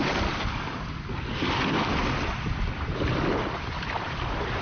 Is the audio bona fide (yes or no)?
no